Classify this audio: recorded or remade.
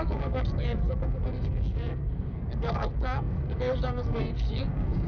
remade